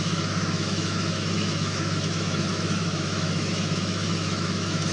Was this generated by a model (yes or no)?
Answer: yes